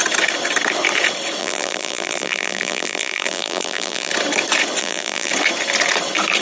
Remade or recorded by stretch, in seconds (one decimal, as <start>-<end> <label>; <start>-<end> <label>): 0.0-1.4 recorded; 1.4-4.1 remade; 4.1-4.8 recorded; 4.8-5.3 remade; 5.3-6.4 recorded